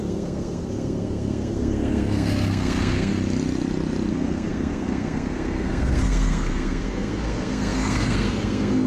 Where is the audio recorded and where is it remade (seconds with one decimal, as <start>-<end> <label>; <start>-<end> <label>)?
0.0-3.1 remade; 3.1-4.1 recorded; 4.1-8.9 remade